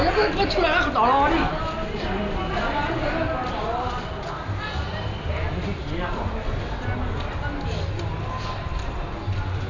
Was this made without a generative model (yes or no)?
yes